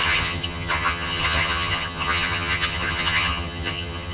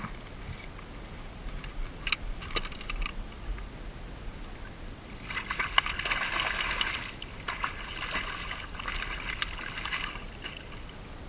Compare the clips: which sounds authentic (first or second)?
second